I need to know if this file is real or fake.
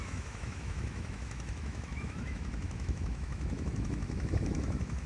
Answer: fake